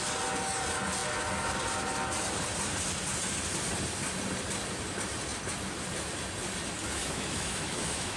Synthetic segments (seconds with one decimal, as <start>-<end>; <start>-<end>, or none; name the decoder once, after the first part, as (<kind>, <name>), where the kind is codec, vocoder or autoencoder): 7.0-8.2 (autoencoder, DAC-VAE)

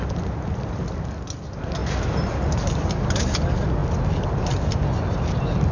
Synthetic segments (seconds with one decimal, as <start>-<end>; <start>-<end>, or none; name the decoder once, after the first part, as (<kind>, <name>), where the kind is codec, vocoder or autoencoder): none

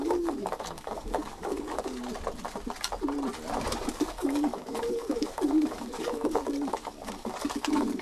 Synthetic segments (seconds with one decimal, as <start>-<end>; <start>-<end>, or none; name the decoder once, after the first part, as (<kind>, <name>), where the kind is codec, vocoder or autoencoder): 0.0-2.0 (codec, DAC); 3.9-8.0

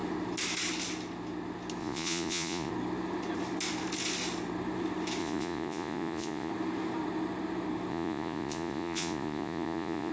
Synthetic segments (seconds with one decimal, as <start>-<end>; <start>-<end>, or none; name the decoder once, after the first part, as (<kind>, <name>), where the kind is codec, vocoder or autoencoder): 1.8-2.7 (vocoder, Vocos); 5.2-6.5; 7.9-10.1

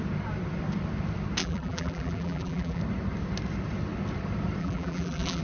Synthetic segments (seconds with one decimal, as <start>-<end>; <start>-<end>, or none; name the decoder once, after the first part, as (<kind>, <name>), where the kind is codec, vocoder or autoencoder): 1.4-2.8 (vocoder, BigVGAN v2); 4.6-5.4